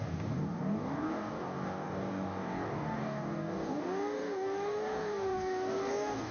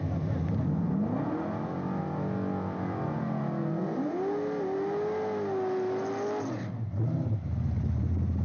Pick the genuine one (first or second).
second